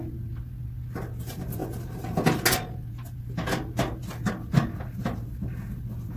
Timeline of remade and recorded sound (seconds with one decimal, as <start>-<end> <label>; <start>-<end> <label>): 0.0-6.2 recorded